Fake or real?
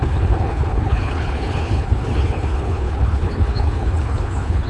fake